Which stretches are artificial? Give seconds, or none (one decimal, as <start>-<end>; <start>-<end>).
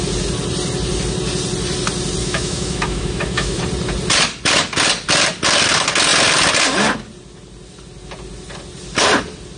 2.2-3.6